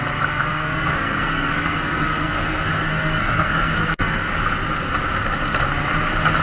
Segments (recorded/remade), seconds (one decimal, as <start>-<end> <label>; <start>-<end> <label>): 0.0-0.5 recorded; 0.5-4.3 remade; 4.3-6.4 recorded